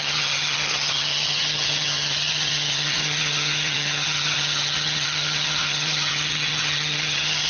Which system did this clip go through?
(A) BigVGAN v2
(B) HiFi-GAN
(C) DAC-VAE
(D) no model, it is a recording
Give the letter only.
B